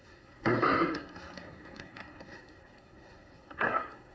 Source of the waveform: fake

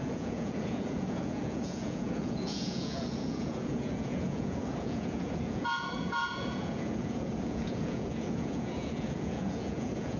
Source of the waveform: fake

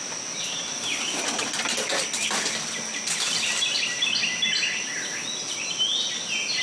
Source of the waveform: real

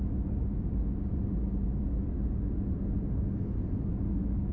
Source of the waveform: real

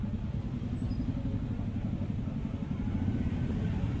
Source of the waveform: real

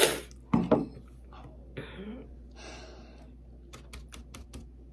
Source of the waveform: real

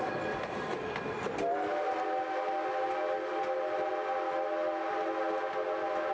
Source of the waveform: real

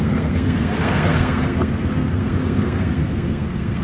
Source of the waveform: fake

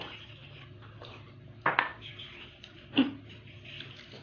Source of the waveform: real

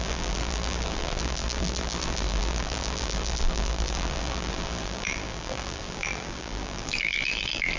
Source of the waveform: fake